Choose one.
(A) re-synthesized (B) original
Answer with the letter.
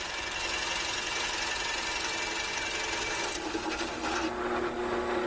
B